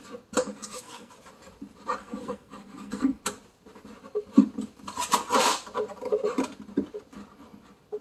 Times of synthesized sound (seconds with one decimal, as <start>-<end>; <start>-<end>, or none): 0.4-1.1; 2.0-3.2